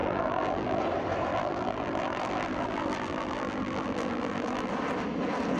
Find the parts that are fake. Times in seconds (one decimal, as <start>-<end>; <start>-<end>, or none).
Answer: 0.0-0.8; 1.3-4.7